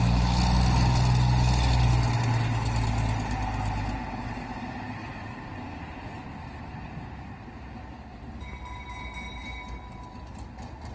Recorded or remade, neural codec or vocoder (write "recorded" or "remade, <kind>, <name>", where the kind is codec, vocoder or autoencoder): recorded